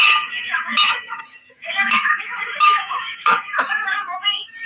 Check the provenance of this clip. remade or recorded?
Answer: remade